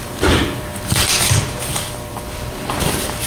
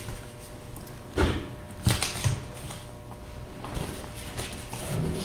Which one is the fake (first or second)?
first